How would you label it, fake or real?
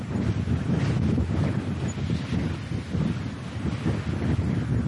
real